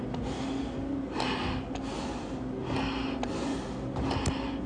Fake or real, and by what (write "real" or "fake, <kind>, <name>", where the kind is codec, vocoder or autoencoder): real